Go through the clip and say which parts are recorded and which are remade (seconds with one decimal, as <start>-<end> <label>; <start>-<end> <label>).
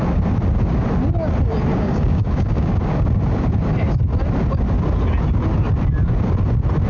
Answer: 0.0-1.7 recorded; 1.7-2.7 remade; 2.7-6.9 recorded